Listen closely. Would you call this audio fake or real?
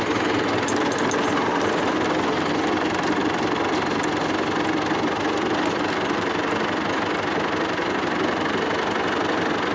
real